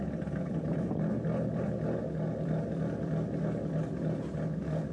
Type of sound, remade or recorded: recorded